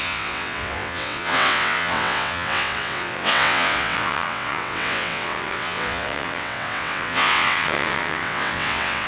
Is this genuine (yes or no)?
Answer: no